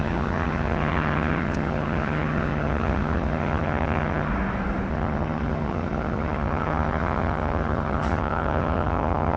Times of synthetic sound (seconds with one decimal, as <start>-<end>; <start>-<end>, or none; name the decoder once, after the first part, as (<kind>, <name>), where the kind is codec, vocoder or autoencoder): 0.0-4.3 (vocoder, HiFi-GAN); 4.9-9.4